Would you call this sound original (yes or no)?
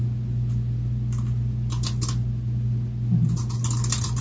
yes